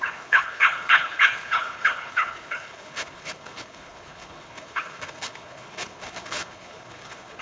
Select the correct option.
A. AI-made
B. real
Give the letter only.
A